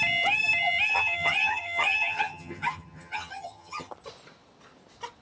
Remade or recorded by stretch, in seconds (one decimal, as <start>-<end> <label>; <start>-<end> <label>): 0.0-0.9 recorded; 0.9-3.9 remade; 3.9-5.2 recorded